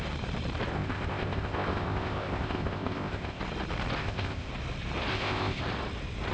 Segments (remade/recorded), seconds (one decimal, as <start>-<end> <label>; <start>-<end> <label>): 0.0-0.7 recorded; 0.7-3.4 remade; 3.4-4.0 recorded; 4.0-4.5 remade; 4.5-5.1 recorded; 5.1-5.6 remade; 5.6-6.3 recorded